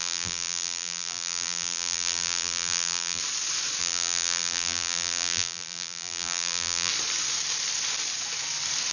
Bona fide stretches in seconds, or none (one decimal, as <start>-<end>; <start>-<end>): 3.2-3.8; 6.9-8.9